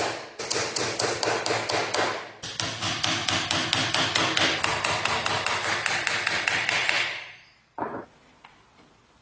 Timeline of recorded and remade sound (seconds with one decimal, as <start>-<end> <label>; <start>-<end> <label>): 0.0-9.2 recorded

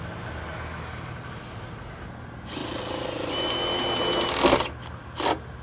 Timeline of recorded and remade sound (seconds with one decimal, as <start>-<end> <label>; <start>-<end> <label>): 0.0-5.6 recorded

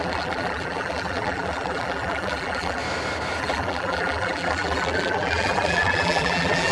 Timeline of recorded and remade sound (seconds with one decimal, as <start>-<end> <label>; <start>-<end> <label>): 0.0-2.8 remade; 2.8-3.4 recorded; 3.4-6.7 remade

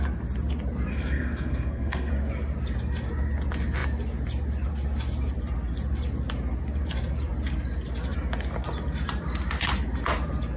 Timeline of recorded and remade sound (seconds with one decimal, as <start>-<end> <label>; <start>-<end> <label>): 0.0-0.9 recorded; 0.9-2.1 remade; 2.1-10.6 recorded

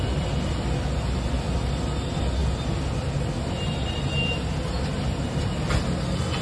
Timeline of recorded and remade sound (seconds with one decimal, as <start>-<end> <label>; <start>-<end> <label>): 0.0-6.4 recorded

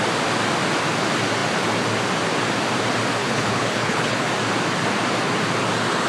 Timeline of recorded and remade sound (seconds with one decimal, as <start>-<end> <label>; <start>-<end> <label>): 0.0-3.2 recorded; 3.2-4.3 remade; 4.3-6.1 recorded

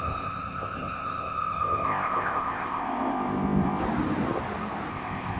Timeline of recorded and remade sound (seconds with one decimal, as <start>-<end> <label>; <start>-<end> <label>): 0.0-3.8 remade; 3.8-4.9 recorded; 4.9-5.4 remade

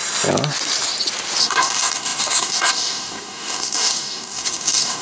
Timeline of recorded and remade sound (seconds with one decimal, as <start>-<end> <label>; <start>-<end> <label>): 0.0-1.4 recorded; 1.4-5.0 remade